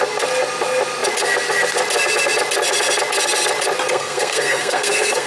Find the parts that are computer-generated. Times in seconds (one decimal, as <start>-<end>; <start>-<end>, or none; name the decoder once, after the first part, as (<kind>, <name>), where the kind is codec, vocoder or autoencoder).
3.9-5.3 (codec, SNAC)